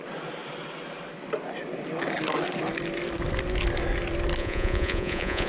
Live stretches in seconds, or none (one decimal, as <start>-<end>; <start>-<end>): 0.0-4.4